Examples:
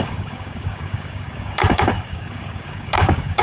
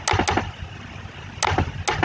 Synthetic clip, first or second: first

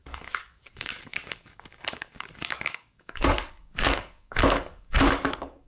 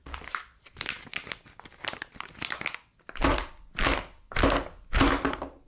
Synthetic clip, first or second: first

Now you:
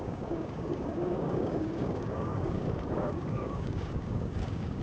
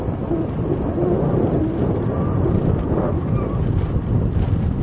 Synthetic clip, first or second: first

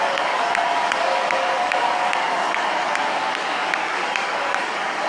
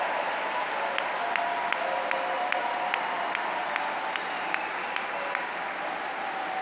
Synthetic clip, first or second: first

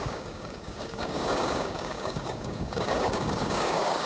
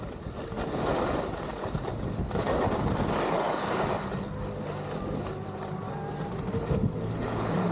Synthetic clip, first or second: first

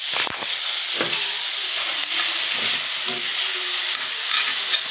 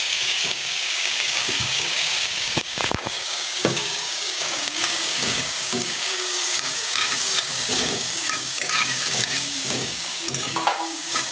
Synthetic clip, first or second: second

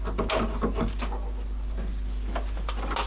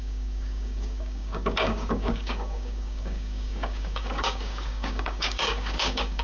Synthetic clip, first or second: second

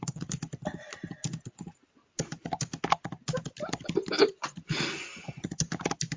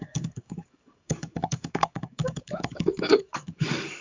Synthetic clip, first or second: second